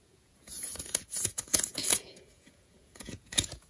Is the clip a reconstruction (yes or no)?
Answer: yes